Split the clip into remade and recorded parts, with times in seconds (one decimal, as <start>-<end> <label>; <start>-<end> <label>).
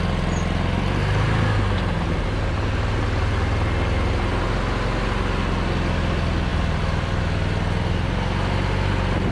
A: 0.0-6.5 recorded; 6.5-7.2 remade; 7.2-9.3 recorded